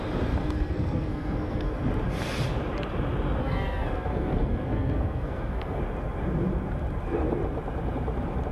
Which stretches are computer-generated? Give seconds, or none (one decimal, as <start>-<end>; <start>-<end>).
0.4-1.7; 3.4-5.8